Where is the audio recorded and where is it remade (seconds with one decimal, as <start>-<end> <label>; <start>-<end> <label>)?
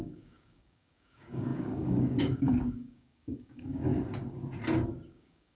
0.0-3.9 remade; 3.9-5.1 recorded; 5.1-5.5 remade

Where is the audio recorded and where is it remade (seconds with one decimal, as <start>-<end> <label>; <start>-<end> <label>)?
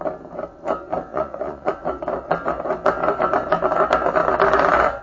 0.0-1.1 recorded; 1.1-1.7 remade; 1.7-5.0 recorded